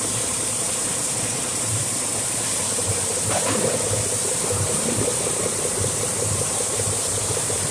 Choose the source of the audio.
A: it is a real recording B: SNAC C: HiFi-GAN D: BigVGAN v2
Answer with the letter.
D